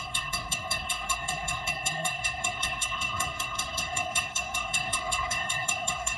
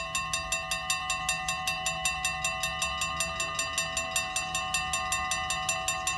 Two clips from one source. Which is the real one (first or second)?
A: second